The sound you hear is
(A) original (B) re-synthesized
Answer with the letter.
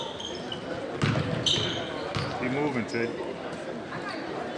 A